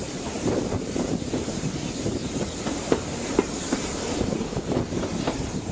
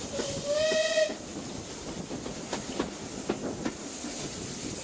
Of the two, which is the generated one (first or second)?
first